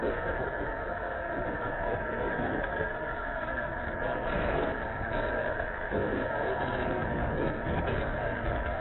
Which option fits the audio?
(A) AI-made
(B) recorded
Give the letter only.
A